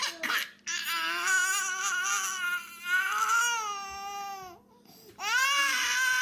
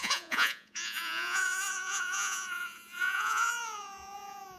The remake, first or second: second